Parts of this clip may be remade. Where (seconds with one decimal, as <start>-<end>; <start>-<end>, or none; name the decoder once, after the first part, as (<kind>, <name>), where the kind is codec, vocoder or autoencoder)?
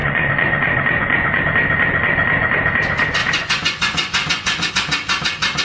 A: 0.0-1.4 (vocoder, Vocos); 3.2-4.7